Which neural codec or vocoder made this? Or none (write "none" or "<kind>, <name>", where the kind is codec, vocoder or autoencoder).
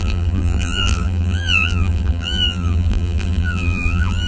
vocoder, BigVGAN v2